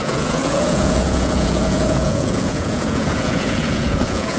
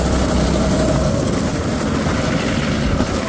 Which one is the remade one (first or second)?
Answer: first